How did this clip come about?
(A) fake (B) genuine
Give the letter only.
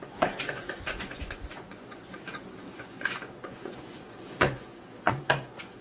A